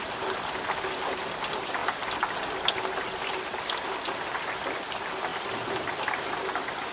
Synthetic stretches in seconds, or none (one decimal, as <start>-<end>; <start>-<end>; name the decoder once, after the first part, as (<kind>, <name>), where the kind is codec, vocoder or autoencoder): 0.0-1.8 (vocoder, BigVGAN v2); 4.1-6.9